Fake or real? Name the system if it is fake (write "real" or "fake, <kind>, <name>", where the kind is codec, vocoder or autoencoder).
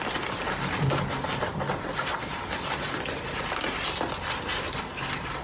real